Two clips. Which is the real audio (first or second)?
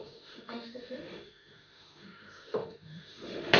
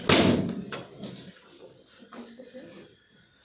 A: second